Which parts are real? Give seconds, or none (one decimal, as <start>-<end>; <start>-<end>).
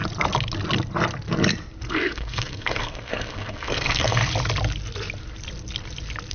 0.0-1.9; 4.2-6.3